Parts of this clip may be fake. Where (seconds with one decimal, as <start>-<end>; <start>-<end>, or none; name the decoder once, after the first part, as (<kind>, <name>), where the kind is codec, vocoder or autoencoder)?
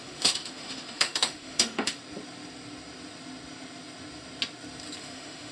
0.0-2.0 (autoencoder, DAC-VAE); 5.0-5.5